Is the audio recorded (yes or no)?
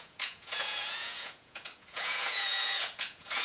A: no